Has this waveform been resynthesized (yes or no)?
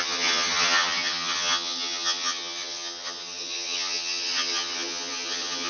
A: yes